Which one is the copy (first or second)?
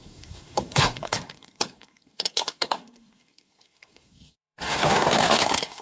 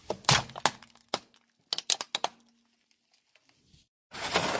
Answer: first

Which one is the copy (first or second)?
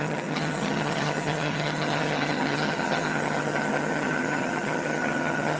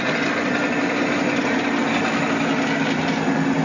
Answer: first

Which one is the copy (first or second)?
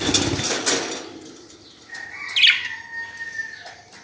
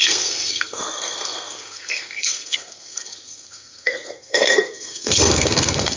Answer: second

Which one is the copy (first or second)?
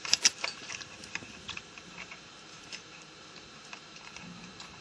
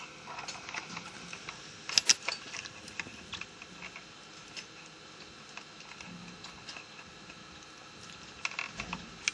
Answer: first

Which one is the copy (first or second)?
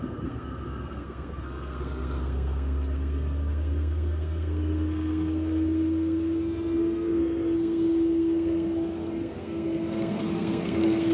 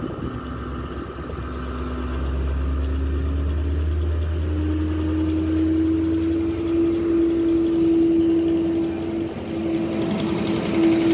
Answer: first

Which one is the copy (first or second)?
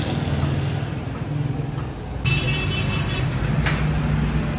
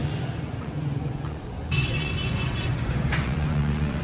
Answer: second